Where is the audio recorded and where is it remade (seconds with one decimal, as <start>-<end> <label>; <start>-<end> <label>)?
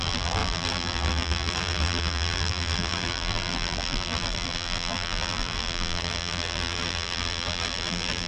0.0-8.3 remade